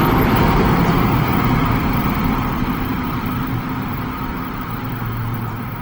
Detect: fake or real fake